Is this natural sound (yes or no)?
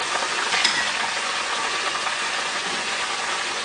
no